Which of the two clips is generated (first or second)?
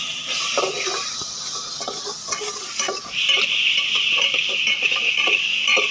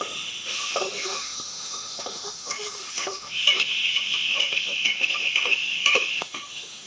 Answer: second